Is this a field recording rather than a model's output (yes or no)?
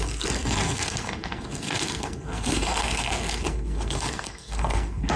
no